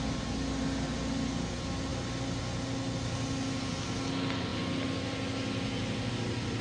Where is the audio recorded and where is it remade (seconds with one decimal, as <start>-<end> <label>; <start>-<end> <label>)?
0.0-6.6 recorded